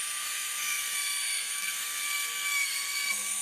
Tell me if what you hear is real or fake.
fake